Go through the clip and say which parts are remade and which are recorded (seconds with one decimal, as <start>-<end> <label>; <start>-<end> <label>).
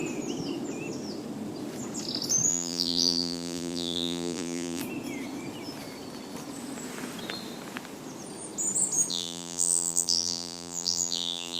0.0-2.5 recorded; 2.5-4.8 remade; 4.8-9.1 recorded; 9.1-11.6 remade